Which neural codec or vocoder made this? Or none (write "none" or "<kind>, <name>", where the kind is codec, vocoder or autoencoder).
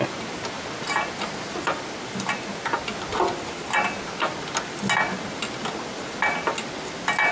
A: none